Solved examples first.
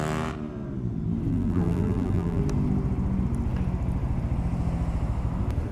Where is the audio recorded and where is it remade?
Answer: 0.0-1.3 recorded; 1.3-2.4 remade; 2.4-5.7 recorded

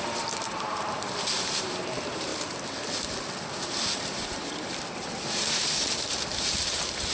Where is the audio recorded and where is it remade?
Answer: 0.0-2.3 remade; 2.3-3.5 recorded; 3.5-7.1 remade